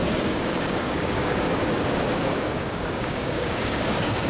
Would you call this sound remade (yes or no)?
yes